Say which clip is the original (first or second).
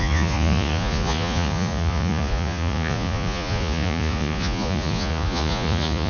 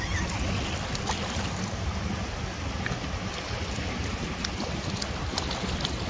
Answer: second